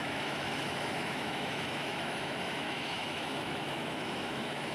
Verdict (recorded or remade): remade